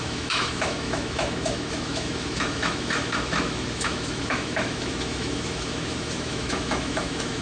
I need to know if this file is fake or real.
fake